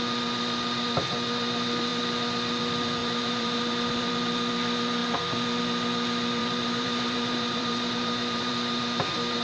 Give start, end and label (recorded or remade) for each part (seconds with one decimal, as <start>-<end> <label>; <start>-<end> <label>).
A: 0.0-3.0 recorded; 3.0-4.1 remade; 4.1-6.4 recorded; 6.4-8.5 remade; 8.5-9.4 recorded